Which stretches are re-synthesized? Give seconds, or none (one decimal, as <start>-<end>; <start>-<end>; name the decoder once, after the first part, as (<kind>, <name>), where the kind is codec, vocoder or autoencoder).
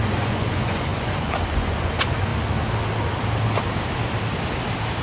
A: 0.0-2.3 (vocoder, Vocos)